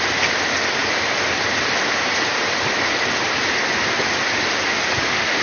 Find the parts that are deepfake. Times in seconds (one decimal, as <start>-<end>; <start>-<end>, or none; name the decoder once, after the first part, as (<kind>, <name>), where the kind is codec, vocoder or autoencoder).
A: none